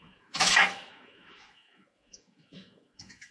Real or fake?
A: fake